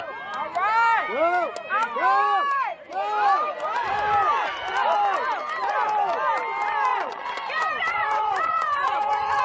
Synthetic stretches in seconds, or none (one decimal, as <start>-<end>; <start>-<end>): 6.9-9.4